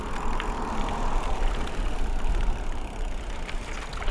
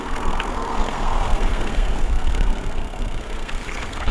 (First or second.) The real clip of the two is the first